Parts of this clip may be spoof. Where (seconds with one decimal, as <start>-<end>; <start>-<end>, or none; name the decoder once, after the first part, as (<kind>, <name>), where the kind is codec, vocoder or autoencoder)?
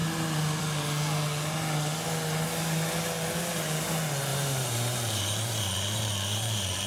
4.3-6.9 (vocoder, BigVGAN v2)